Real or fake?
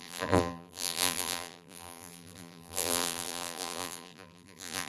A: fake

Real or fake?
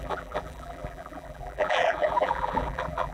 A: fake